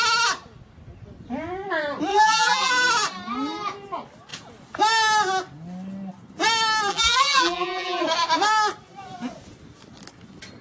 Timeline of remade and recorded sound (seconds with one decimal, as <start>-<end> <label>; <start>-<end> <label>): 0.0-2.1 recorded; 2.1-2.7 remade; 2.7-6.9 recorded; 6.9-8.0 remade; 8.0-10.6 recorded